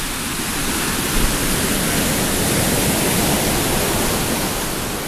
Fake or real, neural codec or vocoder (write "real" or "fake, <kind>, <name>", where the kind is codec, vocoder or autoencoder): real